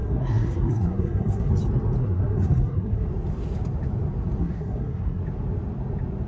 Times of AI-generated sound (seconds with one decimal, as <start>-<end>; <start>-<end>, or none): 0.0-1.5; 2.0-3.1; 4.4-5.2